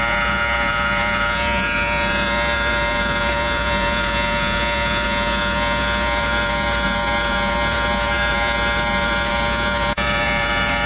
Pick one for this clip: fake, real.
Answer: fake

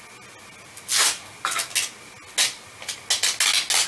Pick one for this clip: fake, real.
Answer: real